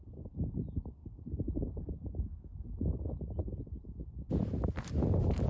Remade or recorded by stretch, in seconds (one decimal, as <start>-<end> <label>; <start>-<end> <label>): 0.0-5.5 recorded